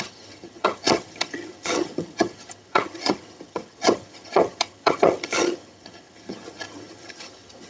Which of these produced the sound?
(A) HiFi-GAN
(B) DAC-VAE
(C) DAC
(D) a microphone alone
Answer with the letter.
A